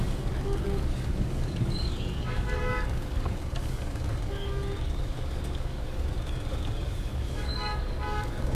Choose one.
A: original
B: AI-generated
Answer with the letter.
B